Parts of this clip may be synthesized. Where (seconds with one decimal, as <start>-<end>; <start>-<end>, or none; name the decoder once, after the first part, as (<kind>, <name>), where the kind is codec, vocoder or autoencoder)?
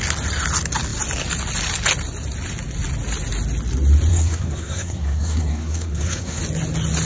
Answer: 4.1-6.4 (codec, SNAC)